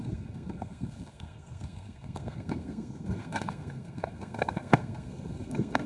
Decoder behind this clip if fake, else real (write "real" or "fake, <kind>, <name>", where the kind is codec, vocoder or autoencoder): fake, codec, SNAC